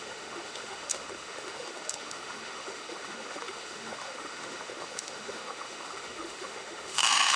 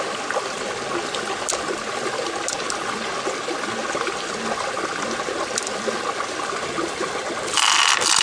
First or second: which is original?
second